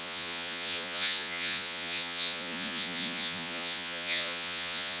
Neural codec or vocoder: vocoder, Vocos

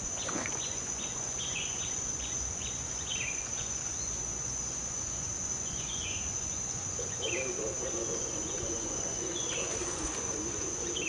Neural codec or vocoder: vocoder, Vocos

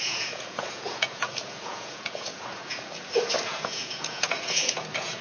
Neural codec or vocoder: vocoder, Vocos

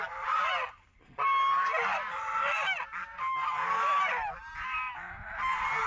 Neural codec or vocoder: none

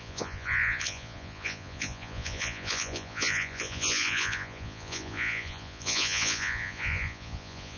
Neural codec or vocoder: vocoder, Vocos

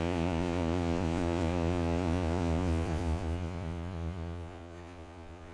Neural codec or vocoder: vocoder, Vocos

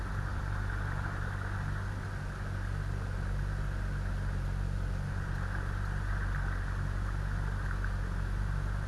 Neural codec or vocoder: none